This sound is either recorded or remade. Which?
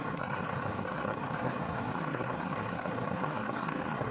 remade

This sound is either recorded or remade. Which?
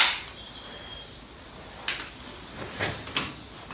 recorded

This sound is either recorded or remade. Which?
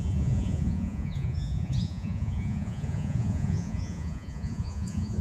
remade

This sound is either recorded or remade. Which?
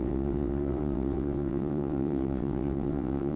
remade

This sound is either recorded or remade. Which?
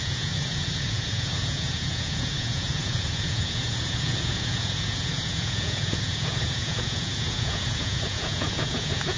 remade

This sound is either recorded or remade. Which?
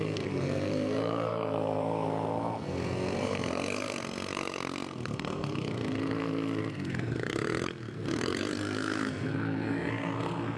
remade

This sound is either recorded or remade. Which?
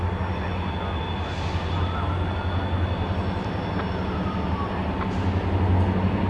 recorded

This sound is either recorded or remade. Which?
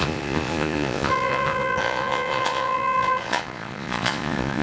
remade